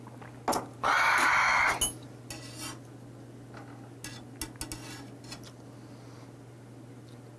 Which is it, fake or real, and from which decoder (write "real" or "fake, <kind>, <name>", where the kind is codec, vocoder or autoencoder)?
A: real